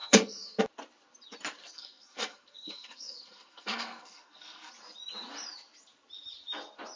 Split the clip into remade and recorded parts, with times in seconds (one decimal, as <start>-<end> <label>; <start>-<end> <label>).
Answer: 0.0-0.6 remade; 0.6-1.6 recorded; 1.6-4.7 remade; 4.7-7.0 recorded